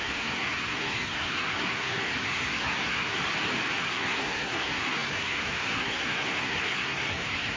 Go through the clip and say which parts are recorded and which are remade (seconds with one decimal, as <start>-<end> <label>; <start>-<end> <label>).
0.0-3.2 remade; 3.2-3.8 recorded; 3.8-7.6 remade